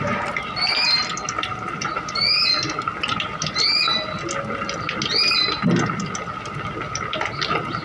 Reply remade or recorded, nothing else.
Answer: recorded